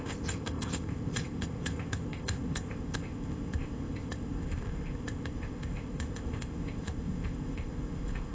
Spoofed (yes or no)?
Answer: yes